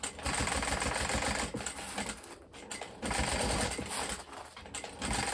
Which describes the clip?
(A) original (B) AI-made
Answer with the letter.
A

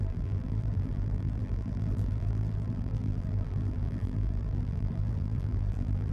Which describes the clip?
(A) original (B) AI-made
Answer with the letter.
B